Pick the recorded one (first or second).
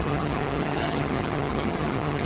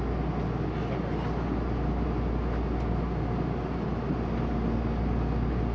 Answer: second